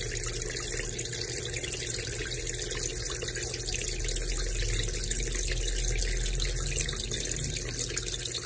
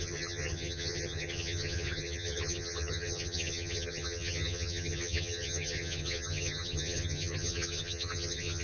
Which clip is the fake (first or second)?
second